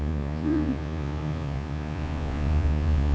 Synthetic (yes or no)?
yes